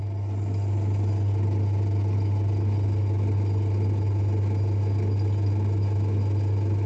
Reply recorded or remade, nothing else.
recorded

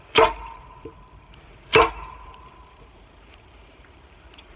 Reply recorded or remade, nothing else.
remade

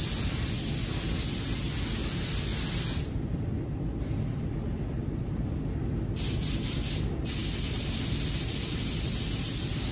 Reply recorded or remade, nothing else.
recorded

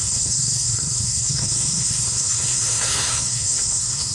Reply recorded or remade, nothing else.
remade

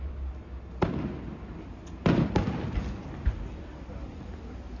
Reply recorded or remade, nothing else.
recorded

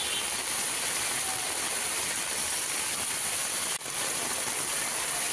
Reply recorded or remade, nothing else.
recorded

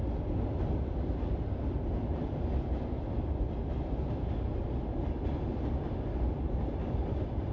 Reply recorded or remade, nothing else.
recorded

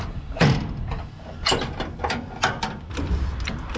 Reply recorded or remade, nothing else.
recorded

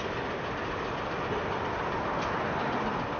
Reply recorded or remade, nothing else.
recorded